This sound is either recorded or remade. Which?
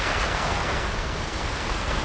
remade